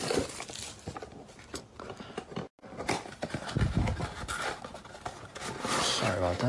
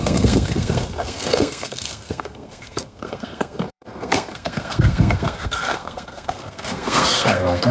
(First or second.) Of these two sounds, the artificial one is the second